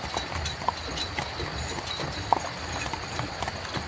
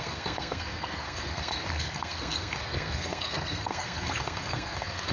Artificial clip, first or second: second